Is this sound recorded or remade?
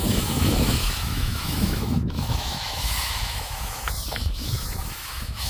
remade